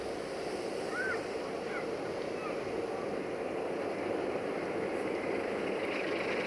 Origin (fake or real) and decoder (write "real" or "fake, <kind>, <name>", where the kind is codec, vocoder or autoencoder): real